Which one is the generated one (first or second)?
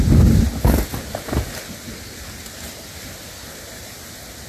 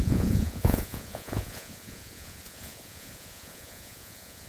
second